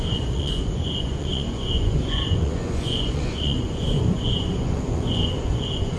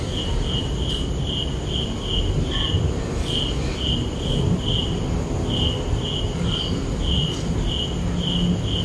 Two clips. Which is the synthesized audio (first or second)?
first